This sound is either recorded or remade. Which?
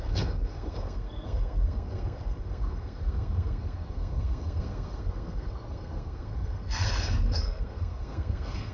remade